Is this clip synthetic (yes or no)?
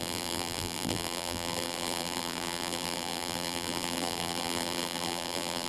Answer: yes